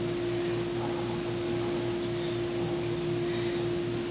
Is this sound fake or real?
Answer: real